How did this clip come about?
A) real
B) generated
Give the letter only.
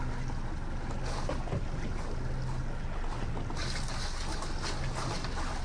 A